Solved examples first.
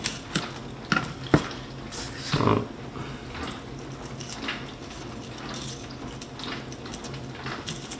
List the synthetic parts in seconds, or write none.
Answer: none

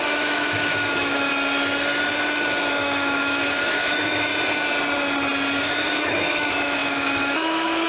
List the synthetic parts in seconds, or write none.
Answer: 0.0-1.3 (autoencoder, DAC-VAE); 2.7-4.3; 5.6-7.9